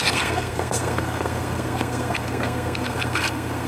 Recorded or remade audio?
remade